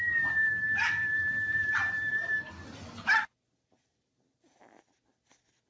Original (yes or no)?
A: yes